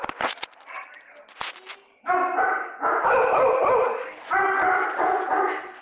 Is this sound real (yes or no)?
yes